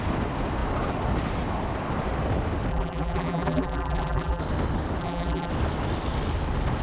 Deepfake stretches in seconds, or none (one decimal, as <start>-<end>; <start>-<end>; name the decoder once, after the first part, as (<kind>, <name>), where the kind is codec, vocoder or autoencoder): 2.7-4.4 (vocoder, BigVGAN v2); 5.0-5.5